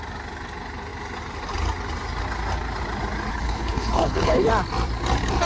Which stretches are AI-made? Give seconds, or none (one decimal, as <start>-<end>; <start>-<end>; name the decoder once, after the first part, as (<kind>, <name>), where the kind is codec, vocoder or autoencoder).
3.3-4.5 (codec, HILCodec)

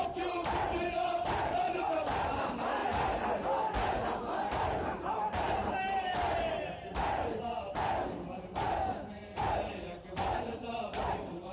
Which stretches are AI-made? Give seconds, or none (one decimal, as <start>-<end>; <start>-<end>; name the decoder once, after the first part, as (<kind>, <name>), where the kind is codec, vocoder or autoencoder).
0.0-2.8 (vocoder, BigVGAN v2); 4.4-11.5

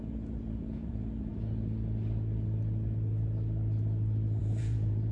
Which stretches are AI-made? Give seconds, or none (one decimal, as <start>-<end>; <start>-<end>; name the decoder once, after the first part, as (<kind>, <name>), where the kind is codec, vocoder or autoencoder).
0.0-1.3 (vocoder, Vocos); 4.4-5.1

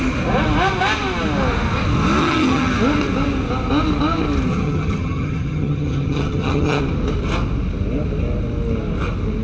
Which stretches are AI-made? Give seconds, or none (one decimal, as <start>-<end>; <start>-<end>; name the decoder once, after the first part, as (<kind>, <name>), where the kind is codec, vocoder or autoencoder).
2.2-2.7 (vocoder, HiFi-GAN); 4.5-6.8

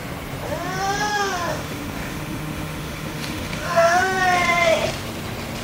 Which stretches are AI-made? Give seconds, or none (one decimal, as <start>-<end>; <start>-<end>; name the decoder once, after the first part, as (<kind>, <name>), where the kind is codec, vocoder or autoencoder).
1.1-4.2 (autoencoder, DAC-VAE)